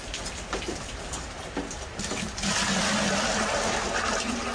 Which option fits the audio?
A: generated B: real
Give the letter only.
B